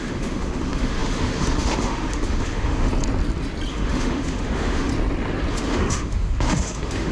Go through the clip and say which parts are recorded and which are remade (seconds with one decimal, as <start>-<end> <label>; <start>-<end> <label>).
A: 0.0-2.9 remade; 2.9-3.7 recorded; 3.7-4.9 remade; 4.9-5.5 recorded; 5.5-7.1 remade